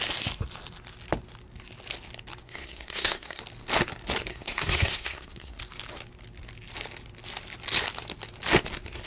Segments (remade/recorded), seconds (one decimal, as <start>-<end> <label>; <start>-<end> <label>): 0.0-2.4 recorded; 2.4-3.4 remade; 3.4-4.3 recorded; 4.3-5.6 remade; 5.6-9.1 recorded